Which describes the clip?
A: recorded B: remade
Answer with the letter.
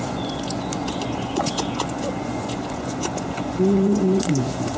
B